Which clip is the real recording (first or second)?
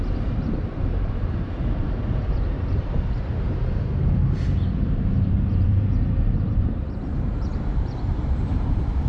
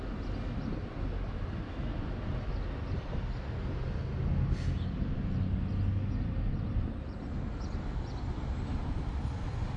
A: second